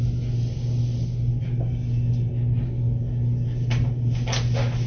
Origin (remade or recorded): recorded